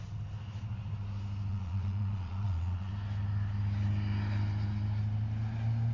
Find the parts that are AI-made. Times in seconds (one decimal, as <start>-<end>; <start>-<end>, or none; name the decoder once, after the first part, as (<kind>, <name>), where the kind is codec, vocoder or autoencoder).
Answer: 1.5-2.9 (vocoder, Vocos)

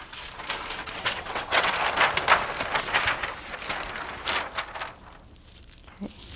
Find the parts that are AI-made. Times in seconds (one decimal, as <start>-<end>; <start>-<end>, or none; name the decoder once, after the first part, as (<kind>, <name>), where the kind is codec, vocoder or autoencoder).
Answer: 0.8-1.8 (vocoder, WaveNeXt)

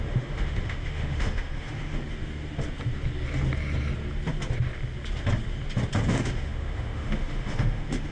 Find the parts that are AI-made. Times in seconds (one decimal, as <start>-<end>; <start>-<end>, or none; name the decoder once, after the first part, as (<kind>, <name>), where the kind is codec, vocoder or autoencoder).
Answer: 0.0-2.0 (autoencoder, DAC-VAE); 6.1-8.1

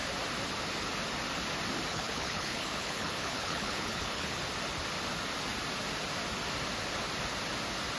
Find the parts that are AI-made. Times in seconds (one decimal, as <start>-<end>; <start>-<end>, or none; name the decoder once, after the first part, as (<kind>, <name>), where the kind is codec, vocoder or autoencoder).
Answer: 1.9-4.4 (codec, HILCodec)